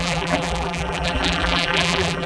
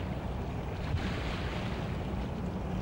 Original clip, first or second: second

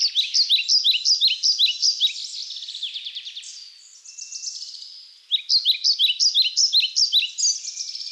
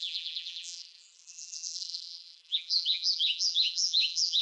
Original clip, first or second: first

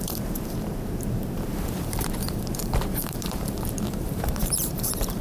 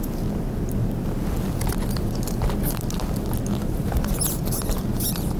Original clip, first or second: second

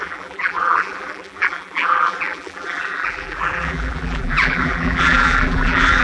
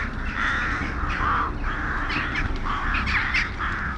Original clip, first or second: second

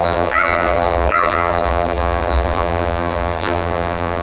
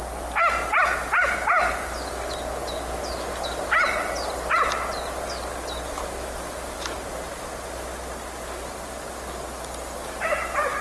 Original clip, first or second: second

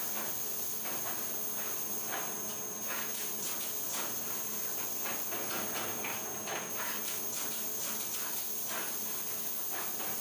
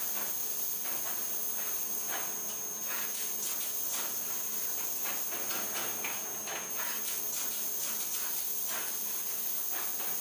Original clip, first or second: second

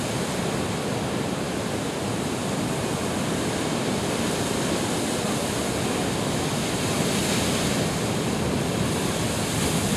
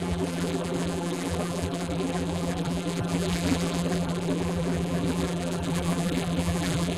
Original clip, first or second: first